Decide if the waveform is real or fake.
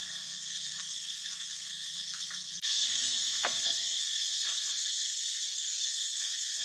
fake